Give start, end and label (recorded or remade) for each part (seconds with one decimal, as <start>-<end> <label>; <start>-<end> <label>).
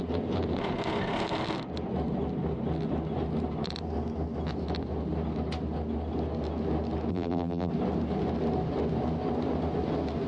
0.0-7.1 recorded; 7.1-7.7 remade; 7.7-10.3 recorded